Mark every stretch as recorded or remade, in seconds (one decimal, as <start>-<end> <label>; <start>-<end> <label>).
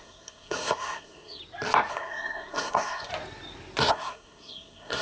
0.0-1.4 remade; 1.4-1.9 recorded; 1.9-3.1 remade; 3.1-3.9 recorded; 3.9-5.0 remade